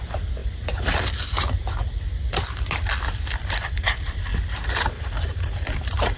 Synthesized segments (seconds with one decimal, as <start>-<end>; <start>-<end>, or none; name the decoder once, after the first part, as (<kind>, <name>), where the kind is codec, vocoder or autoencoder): 0.0-0.4 (vocoder, BigVGAN v2); 3.5-4.3; 4.8-6.2